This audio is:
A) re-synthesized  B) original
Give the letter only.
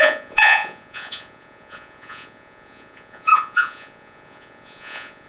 A